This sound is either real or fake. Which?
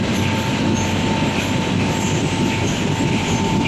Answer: real